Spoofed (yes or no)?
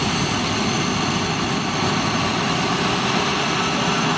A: no